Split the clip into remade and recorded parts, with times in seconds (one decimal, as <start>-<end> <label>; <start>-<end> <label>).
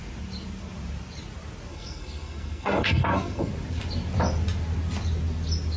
0.0-1.7 recorded; 1.7-3.5 remade; 3.5-5.8 recorded